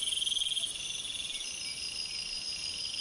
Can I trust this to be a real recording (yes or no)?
yes